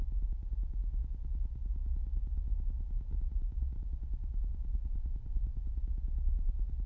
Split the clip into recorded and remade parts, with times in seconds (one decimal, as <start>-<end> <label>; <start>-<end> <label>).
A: 0.0-6.9 recorded